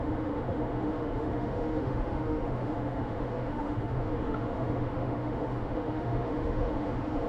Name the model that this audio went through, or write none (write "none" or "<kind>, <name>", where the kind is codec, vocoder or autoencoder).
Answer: autoencoder, DAC-VAE